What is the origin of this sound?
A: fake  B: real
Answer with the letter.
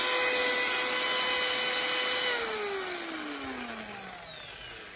B